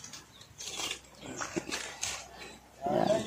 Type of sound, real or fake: real